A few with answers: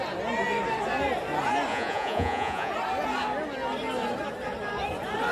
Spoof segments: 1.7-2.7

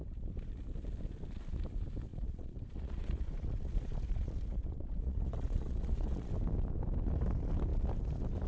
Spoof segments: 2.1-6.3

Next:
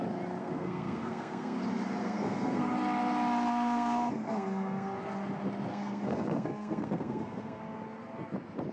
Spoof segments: 0.4-1.6; 2.0-2.7; 3.5-5.0; 5.7-7.6

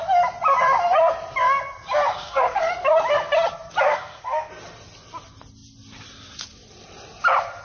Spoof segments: 2.1-2.7; 3.9-4.5

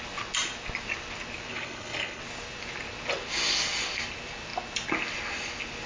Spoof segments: 1.5-2.2

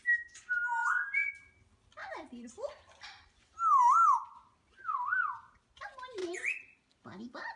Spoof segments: 0.8-1.3